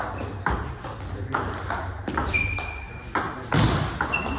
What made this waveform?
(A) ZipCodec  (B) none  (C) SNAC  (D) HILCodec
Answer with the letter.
B